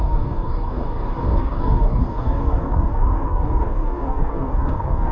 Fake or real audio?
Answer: fake